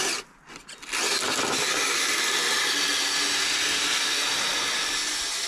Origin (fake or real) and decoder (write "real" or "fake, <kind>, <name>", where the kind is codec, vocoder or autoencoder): real